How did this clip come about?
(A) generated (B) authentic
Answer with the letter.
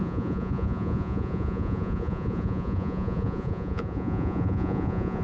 A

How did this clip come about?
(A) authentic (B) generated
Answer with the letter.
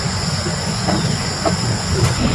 B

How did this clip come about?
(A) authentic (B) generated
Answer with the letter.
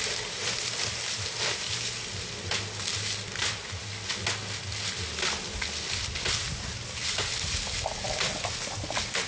A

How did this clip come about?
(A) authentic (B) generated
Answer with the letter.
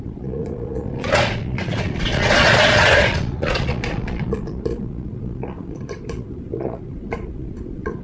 B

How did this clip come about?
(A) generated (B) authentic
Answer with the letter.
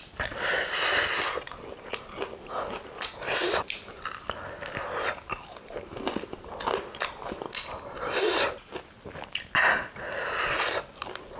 B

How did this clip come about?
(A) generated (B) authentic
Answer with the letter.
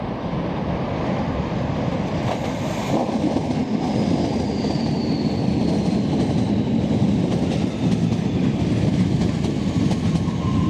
B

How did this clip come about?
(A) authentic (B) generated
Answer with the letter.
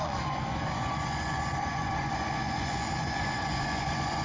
B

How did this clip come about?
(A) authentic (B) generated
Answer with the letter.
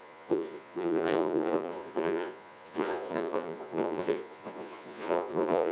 B